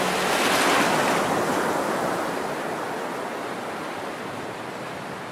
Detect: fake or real real